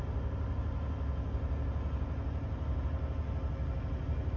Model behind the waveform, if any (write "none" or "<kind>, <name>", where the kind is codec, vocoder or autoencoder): none